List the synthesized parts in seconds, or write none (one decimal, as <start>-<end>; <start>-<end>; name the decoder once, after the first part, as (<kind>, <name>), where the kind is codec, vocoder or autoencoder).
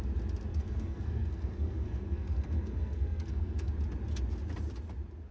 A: 0.5-3.7 (codec, SNAC)